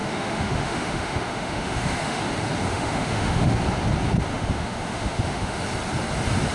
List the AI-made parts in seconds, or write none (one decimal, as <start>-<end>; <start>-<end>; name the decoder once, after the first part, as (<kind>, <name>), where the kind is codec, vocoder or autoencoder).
0.0-2.2 (autoencoder, DAC-VAE); 2.7-3.6; 4.3-5.6